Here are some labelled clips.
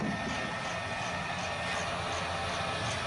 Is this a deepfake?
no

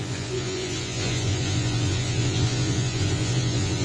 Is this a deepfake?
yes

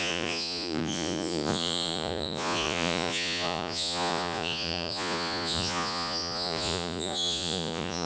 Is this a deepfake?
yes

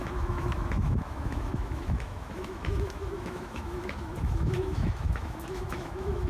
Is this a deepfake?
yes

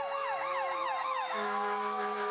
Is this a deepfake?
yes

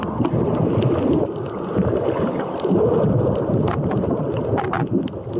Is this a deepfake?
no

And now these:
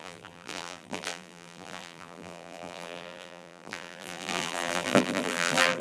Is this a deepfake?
yes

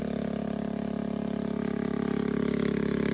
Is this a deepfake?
no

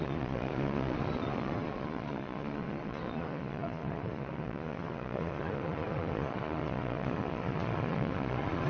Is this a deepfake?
yes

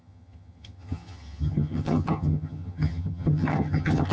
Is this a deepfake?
yes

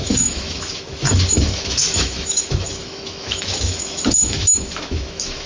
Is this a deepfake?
yes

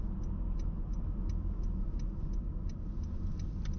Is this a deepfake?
no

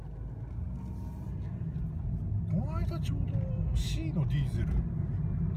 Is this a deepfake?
no